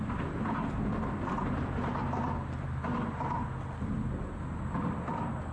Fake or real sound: real